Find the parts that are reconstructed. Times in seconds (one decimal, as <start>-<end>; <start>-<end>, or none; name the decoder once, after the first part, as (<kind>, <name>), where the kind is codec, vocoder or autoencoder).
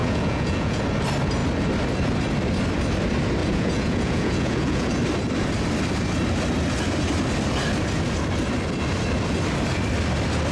0.0-0.8 (vocoder, Vocos); 3.4-4.9